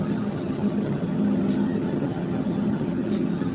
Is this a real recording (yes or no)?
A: no